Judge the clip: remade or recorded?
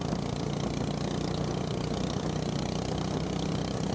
recorded